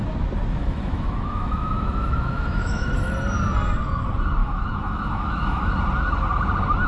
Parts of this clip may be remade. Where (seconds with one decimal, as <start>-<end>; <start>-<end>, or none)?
0.6-3.1; 4.4-5.7